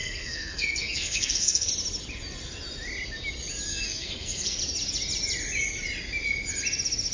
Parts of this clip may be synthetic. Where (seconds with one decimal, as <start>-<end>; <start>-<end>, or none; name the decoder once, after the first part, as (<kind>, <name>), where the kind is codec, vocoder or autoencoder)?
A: 0.0-1.7 (codec, SNAC); 3.7-4.6